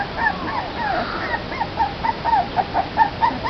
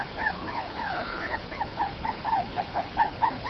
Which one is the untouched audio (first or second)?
first